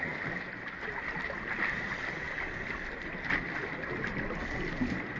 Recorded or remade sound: recorded